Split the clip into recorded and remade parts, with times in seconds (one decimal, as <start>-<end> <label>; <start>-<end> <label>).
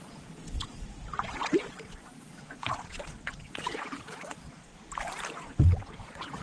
0.0-4.7 remade; 4.7-5.3 recorded; 5.3-6.4 remade